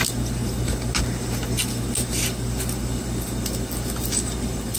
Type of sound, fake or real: real